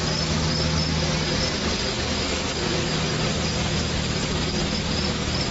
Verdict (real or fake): real